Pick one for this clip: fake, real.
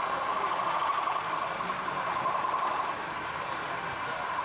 real